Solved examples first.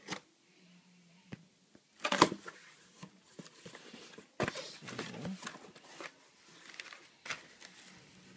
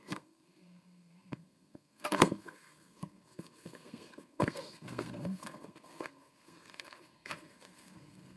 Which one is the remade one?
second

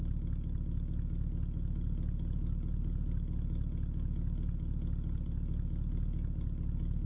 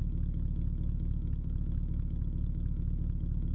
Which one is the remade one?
second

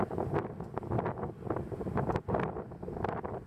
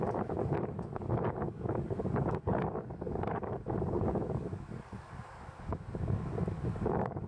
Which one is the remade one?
second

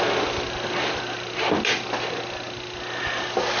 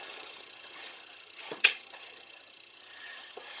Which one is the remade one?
second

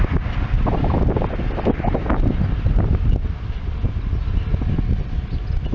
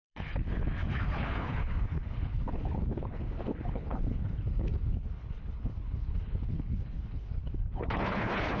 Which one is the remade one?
second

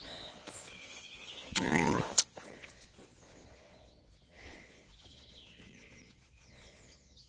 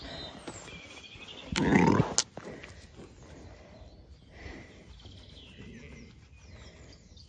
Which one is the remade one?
first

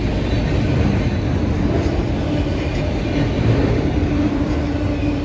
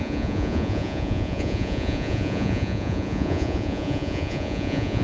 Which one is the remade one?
second